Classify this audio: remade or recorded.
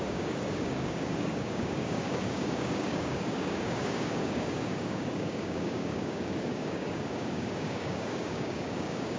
remade